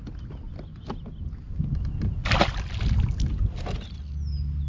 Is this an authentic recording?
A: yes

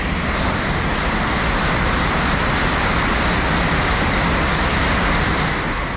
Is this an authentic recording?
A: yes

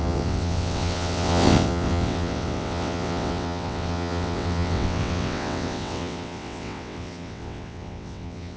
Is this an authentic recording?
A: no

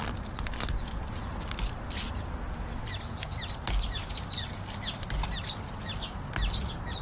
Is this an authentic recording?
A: yes